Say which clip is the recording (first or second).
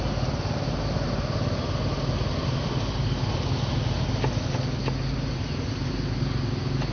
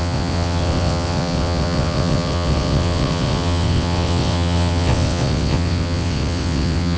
first